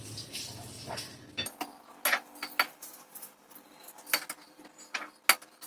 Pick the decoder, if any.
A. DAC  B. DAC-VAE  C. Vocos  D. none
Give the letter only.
D